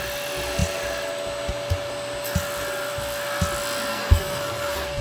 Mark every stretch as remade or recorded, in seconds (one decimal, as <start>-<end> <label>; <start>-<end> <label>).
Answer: 0.0-3.9 recorded; 3.9-5.0 remade